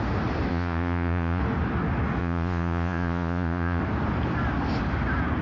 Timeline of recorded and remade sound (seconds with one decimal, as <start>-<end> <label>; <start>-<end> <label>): 0.0-0.5 recorded; 0.5-1.4 remade; 1.4-2.2 recorded; 2.2-3.8 remade; 3.8-5.4 recorded